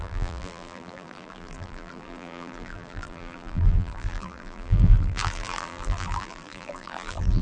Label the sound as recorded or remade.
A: remade